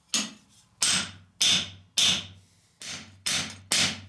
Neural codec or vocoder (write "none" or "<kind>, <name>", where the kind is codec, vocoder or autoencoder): none